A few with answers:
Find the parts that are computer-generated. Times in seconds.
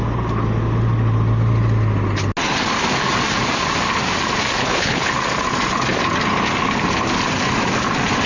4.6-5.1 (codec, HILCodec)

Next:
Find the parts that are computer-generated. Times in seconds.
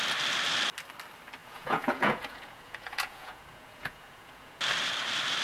1.4-4.6 (vocoder, Vocos)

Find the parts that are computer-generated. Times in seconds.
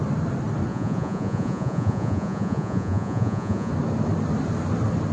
0.7-3.7 (vocoder, Vocos)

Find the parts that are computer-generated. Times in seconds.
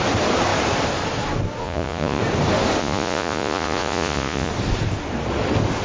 1.6-2.2 (vocoder, Vocos); 2.8-4.5